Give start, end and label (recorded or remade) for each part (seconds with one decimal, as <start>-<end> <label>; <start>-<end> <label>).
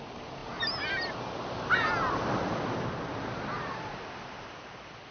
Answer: 0.0-5.1 recorded